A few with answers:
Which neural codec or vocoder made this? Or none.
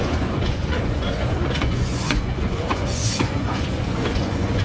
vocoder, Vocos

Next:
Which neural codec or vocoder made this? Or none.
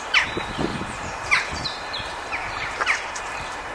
vocoder, BigVGAN v2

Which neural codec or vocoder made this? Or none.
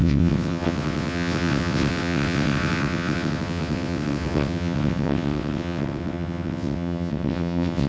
vocoder, WaveNeXt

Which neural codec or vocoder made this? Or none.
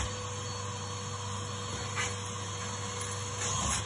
none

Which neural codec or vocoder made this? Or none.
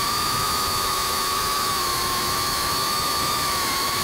autoencoder, DAC-VAE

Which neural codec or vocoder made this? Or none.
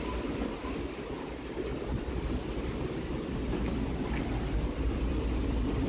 none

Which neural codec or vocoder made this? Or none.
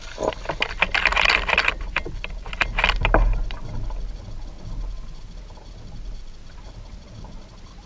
none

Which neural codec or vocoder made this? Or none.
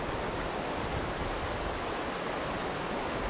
none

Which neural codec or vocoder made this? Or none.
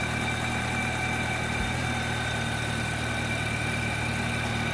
none